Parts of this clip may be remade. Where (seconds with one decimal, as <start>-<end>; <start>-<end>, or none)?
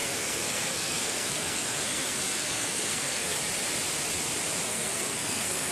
0.0-3.4; 4.7-5.7